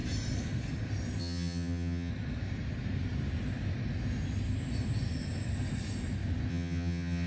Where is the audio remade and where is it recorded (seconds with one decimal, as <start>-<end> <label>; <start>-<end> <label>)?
0.0-1.2 recorded; 1.2-2.1 remade; 2.1-6.5 recorded; 6.5-7.3 remade